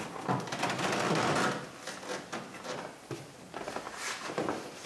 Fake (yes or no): no